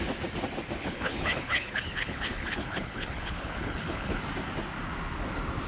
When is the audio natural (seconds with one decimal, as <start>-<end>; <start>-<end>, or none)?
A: 0.0-0.8; 4.2-5.7